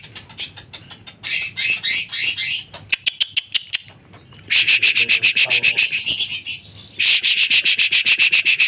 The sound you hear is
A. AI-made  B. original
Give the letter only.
B